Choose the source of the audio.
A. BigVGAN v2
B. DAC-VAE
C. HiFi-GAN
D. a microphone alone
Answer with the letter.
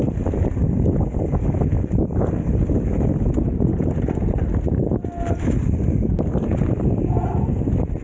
D